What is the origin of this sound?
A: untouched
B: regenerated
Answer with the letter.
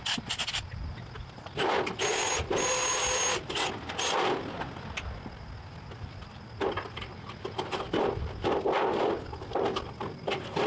A